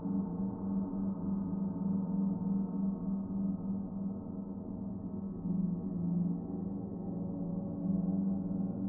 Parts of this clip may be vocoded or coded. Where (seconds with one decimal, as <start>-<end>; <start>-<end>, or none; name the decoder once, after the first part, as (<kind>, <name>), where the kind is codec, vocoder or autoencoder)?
none

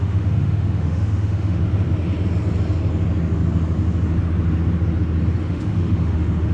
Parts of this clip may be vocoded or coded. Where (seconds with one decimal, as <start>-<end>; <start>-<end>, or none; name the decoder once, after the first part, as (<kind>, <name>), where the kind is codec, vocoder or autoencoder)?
0.0-1.6 (autoencoder, DAC-VAE); 5.5-6.5

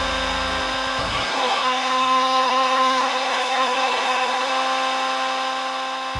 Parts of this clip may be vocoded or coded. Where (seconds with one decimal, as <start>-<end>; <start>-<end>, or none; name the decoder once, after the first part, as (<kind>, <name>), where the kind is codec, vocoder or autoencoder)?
1.0-4.5 (codec, SNAC)

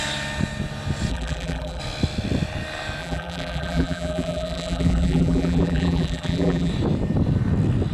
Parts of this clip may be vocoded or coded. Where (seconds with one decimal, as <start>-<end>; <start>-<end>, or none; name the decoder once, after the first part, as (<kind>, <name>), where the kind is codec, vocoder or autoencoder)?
1.1-1.8 (vocoder, BigVGAN v2); 3.0-6.7

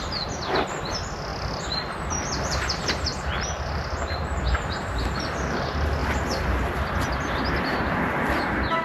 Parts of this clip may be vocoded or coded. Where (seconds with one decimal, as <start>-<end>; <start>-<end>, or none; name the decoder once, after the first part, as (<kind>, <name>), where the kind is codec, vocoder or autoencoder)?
1.3-5.2 (vocoder, BigVGAN v2)

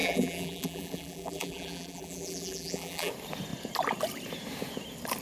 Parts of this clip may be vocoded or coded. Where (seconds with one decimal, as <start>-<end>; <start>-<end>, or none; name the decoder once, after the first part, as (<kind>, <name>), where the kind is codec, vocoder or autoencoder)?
0.0-3.1 (vocoder, BigVGAN v2)

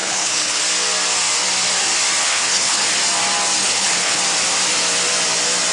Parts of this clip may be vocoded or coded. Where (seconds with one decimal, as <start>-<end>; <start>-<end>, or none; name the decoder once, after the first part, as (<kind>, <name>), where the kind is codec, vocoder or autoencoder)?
0.0-0.6 (codec, HILCodec); 2.2-2.9; 3.6-4.2

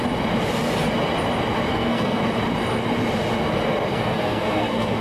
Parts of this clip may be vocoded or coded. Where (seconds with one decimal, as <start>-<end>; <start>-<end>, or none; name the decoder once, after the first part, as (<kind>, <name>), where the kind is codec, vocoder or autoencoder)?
1.7-2.2 (codec, SNAC); 3.9-5.0